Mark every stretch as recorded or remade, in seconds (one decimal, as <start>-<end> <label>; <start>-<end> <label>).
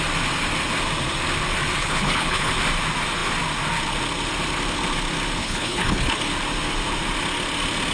0.0-1.8 recorded; 1.8-2.5 remade; 2.5-5.4 recorded; 5.4-6.2 remade; 6.2-7.9 recorded